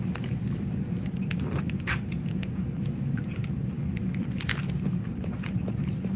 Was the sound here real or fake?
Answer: fake